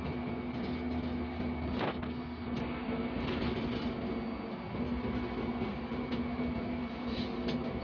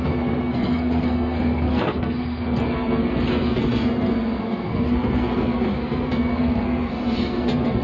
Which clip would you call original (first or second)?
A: first